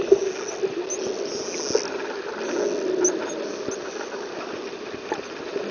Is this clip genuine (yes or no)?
yes